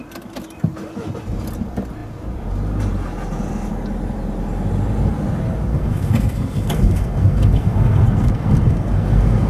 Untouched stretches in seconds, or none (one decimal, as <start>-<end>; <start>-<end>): 0.0-5.7